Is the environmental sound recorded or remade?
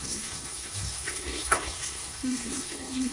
remade